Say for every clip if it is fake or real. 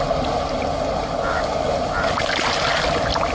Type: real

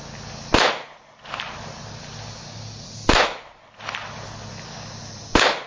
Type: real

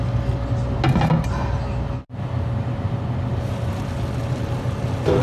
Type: real